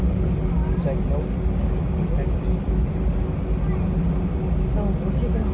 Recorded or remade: recorded